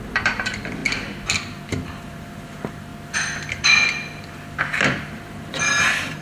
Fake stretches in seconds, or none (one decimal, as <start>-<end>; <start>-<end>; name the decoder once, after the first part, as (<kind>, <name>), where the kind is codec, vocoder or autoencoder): 0.0-0.8 (vocoder, BigVGAN v2); 1.6-2.9; 4.6-6.2